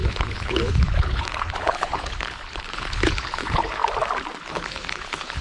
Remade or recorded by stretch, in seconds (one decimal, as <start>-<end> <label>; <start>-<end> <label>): 0.0-3.8 remade; 3.8-4.4 recorded; 4.4-5.4 remade